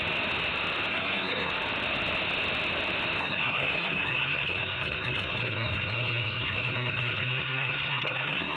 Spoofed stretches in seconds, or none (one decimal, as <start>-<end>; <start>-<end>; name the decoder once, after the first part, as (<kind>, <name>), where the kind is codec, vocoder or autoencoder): 0.9-1.5 (codec, SNAC); 3.2-8.6